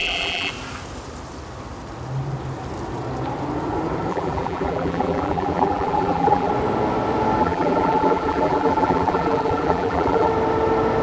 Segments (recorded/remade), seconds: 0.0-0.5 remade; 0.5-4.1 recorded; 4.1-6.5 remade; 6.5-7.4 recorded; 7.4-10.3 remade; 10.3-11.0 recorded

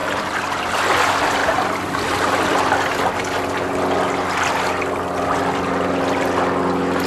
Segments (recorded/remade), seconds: 0.0-0.7 remade; 0.7-1.4 recorded; 1.4-2.7 remade; 2.7-7.1 recorded